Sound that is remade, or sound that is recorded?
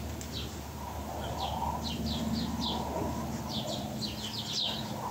recorded